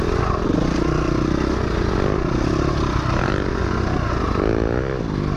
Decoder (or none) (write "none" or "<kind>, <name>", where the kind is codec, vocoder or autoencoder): none